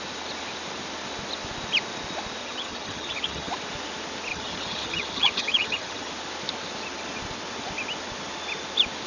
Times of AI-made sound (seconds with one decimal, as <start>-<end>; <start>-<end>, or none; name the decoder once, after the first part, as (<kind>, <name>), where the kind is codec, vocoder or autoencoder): 2.4-3.5 (vocoder, HiFi-GAN); 4.3-6.1